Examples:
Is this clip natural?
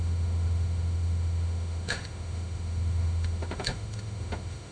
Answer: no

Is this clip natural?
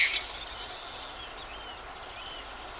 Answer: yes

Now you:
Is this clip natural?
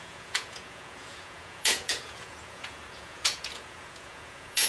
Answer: no